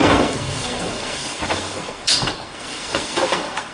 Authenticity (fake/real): fake